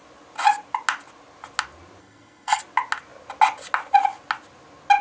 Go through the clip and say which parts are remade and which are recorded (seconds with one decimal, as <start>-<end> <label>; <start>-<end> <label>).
0.0-2.0 recorded; 2.0-2.6 remade; 2.6-5.0 recorded